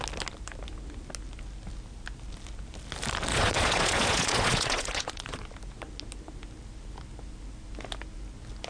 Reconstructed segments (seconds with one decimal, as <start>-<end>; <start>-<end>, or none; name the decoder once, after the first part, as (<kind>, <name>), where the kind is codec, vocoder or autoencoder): 3.3-5.4 (vocoder, Vocos)